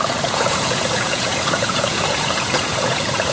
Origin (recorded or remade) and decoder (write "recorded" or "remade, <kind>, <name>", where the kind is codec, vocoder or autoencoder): remade, vocoder, Vocos